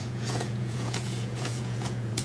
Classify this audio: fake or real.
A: fake